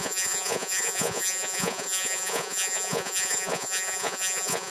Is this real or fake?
fake